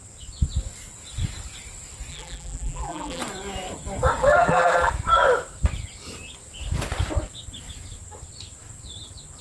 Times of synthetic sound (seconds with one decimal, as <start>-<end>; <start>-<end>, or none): 2.1-3.2; 4.2-4.9